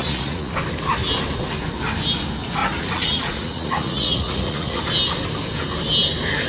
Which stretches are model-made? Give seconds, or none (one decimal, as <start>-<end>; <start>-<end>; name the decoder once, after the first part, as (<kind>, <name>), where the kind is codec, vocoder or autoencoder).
0.0-0.5 (vocoder, Vocos); 2.6-4.8